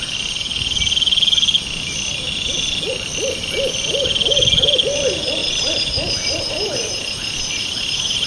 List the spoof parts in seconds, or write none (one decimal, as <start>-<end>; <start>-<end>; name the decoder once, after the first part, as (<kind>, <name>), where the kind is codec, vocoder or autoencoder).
5.4-8.3 (vocoder, BigVGAN v2)